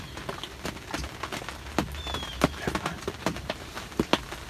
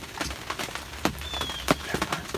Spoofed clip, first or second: second